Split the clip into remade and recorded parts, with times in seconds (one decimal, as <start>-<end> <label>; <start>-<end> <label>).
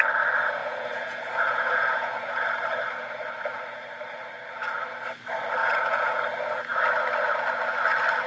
0.0-0.6 recorded; 0.6-2.4 remade; 2.4-5.6 recorded; 5.6-6.2 remade; 6.2-8.3 recorded